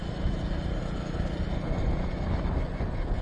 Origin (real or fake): real